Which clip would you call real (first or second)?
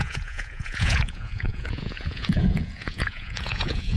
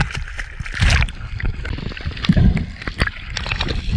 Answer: second